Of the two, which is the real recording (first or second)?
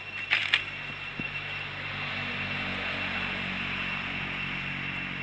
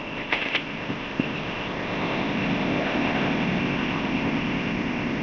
first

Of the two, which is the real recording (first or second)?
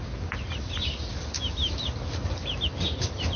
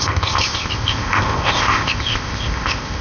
first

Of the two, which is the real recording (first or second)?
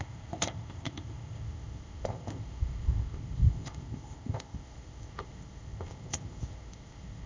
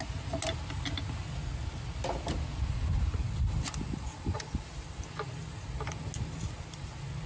second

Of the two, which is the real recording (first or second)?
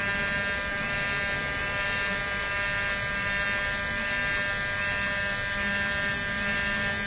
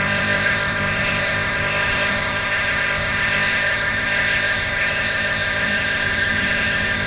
first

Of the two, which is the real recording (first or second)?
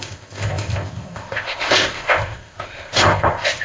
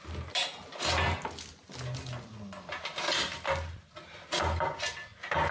second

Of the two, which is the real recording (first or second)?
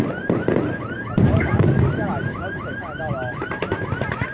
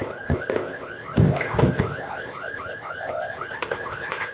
first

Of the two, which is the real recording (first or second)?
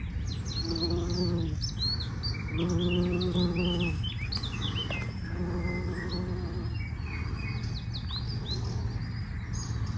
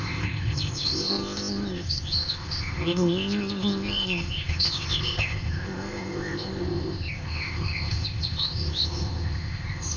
first